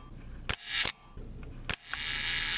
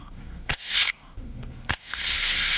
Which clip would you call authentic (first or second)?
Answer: first